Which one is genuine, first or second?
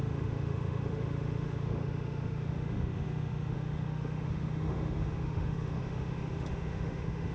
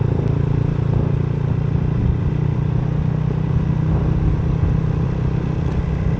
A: second